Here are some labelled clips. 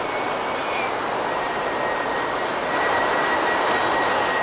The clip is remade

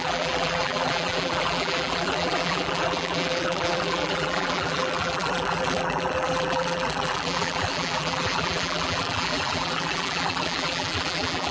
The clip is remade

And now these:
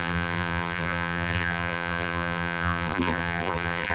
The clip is remade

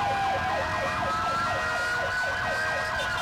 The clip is recorded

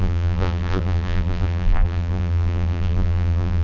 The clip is remade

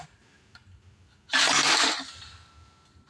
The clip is recorded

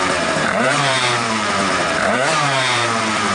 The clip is remade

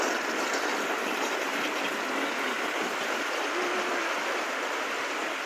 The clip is recorded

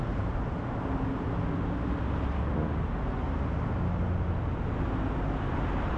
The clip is recorded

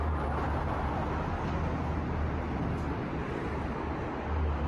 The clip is recorded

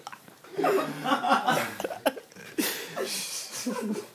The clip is remade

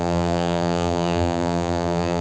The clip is remade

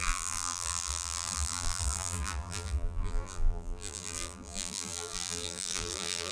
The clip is remade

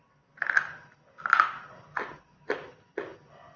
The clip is recorded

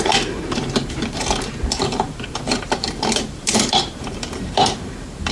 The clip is remade